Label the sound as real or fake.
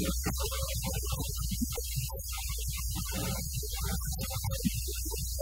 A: fake